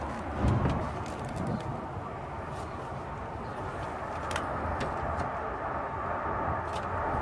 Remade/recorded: recorded